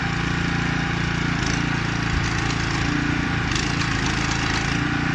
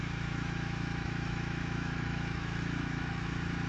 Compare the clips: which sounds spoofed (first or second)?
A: second